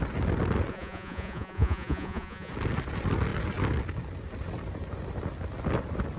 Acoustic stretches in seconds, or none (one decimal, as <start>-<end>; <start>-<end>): 0.0-0.7; 2.5-6.2